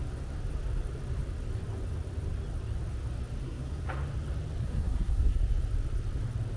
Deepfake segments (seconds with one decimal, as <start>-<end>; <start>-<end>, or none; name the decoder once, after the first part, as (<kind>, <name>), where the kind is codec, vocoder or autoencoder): 3.4-3.9 (codec, SNAC); 4.6-5.4

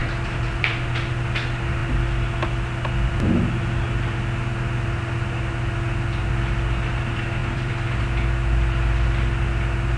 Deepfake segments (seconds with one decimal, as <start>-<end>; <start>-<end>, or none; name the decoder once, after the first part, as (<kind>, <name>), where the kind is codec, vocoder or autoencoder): 0.0-1.1 (vocoder, BigVGAN v2); 7.4-8.0

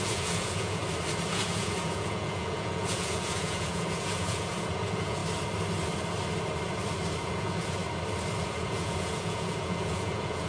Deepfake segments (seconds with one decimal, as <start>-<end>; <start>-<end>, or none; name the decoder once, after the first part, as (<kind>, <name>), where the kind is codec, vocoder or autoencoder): 0.0-0.8 (vocoder, Vocos); 1.3-5.2; 7.2-7.8; 8.4-10.5